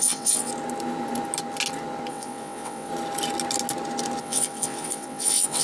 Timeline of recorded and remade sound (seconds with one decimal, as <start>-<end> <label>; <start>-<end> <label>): 0.0-0.5 remade; 0.5-2.1 recorded; 2.1-2.9 remade; 2.9-4.2 recorded; 4.2-5.6 remade